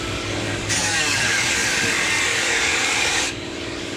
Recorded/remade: remade